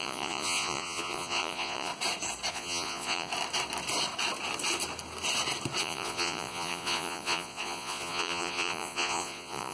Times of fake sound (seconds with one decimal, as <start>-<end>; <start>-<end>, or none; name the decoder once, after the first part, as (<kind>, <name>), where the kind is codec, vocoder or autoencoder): 0.0-1.9 (vocoder, Vocos); 2.5-3.3; 5.8-9.7